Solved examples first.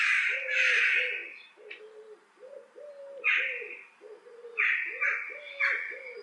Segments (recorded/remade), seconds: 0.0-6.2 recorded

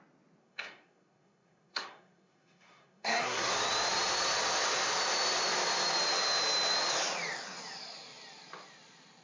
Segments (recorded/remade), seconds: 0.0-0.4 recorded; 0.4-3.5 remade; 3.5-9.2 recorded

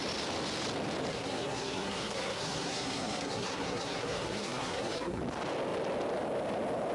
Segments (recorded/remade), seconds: 0.0-1.1 recorded; 1.1-5.2 remade; 5.2-6.9 recorded

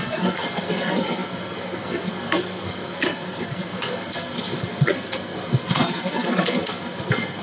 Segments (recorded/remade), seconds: 0.0-7.4 remade

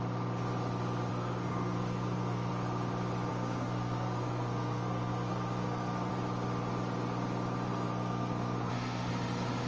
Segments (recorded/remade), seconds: 0.0-1.1 recorded; 1.1-2.5 remade; 2.5-3.3 recorded; 3.3-6.1 remade; 6.1-7.7 recorded; 7.7-9.1 remade; 9.1-9.7 recorded

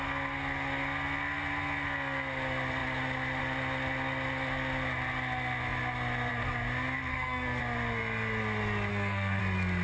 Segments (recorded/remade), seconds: 0.0-7.1 recorded; 7.1-7.6 remade; 7.6-8.9 recorded; 8.9-9.4 remade; 9.4-9.8 recorded

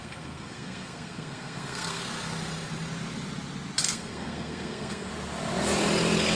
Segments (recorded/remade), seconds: 0.0-2.0 remade; 2.0-3.8 recorded; 3.8-5.1 remade; 5.1-6.3 recorded